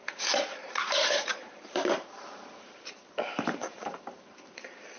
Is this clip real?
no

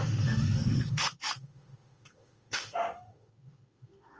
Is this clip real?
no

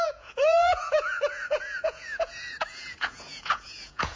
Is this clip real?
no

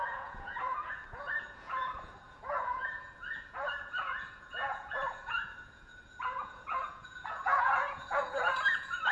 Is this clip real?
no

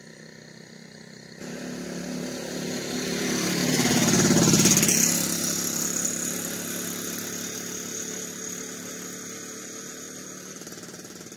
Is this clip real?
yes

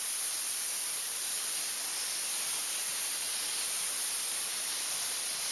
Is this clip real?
yes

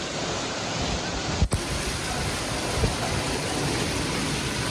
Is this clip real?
yes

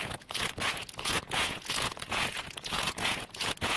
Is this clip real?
no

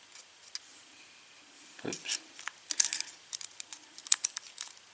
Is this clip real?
yes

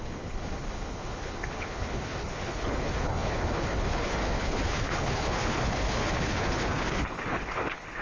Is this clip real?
no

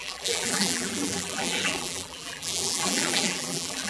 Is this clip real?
no